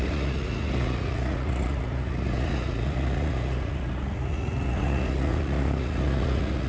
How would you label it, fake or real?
fake